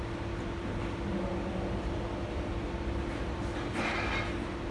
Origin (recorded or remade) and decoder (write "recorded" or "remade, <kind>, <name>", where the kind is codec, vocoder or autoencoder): recorded